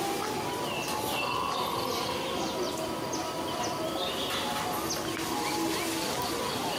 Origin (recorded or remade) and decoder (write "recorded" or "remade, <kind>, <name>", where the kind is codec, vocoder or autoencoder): recorded